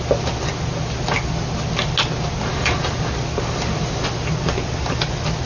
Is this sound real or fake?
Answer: real